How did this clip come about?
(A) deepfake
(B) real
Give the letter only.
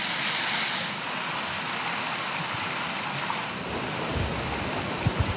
B